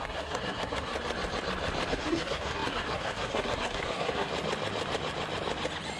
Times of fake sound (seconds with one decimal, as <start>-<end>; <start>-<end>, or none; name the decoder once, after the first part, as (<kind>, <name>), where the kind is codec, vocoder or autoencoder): 0.0-0.9 (codec, SNAC); 1.9-4.3